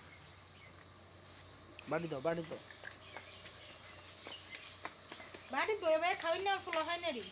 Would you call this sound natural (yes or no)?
yes